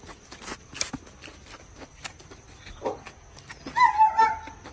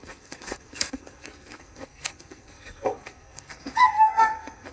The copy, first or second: second